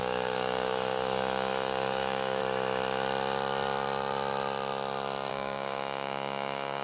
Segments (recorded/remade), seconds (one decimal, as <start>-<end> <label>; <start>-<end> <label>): 0.0-2.4 remade; 2.4-5.3 recorded; 5.3-6.8 remade